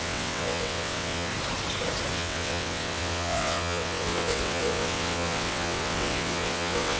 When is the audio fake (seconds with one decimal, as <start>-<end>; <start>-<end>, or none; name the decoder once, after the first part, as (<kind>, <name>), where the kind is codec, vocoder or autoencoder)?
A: 0.0-1.3 (vocoder, WaveNeXt); 2.1-7.0